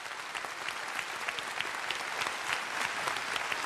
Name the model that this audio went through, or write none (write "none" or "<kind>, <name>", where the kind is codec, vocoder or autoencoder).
none